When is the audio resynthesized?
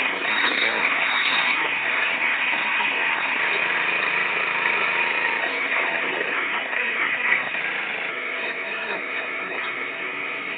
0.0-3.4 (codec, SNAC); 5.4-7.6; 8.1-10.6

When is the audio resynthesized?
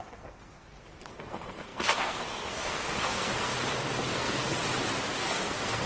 0.0-3.5 (codec, SNAC); 4.1-4.6; 5.2-5.9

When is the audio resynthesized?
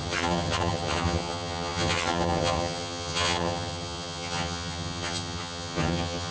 0.0-6.3 (vocoder, HiFi-GAN)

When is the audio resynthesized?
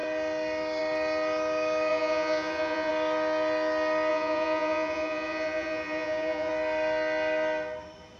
1.9-2.9 (vocoder, Vocos); 4.1-6.5